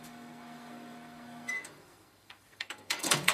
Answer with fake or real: fake